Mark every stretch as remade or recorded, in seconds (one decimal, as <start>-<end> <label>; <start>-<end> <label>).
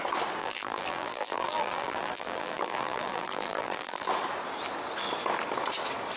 0.0-0.4 recorded; 0.4-4.1 remade; 4.1-6.2 recorded